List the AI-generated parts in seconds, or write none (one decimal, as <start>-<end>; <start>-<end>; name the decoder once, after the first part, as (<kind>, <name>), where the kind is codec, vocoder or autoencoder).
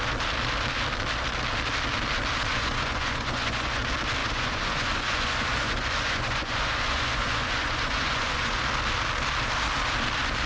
2.5-3.8 (vocoder, Vocos); 4.2-8.6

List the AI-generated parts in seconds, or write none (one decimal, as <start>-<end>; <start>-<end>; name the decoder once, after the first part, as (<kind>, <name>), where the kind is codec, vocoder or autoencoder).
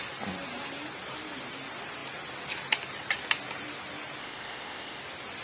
4.2-5.0 (codec, ZipCodec)